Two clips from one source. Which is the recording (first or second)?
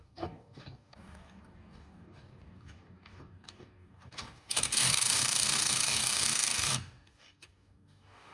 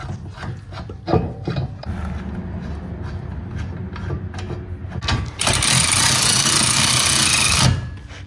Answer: second